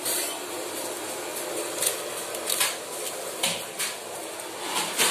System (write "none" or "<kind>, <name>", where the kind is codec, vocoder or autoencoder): none